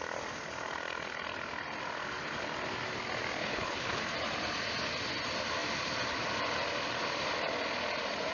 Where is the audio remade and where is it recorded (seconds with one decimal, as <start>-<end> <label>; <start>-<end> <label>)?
0.0-3.4 recorded; 3.4-4.0 remade; 4.0-8.3 recorded